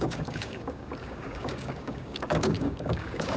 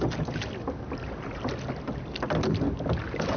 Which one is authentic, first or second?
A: second